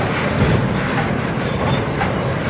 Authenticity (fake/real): fake